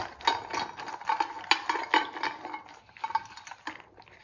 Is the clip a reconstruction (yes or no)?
no